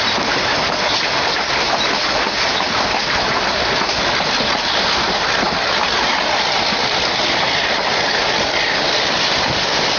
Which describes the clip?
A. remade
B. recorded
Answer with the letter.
B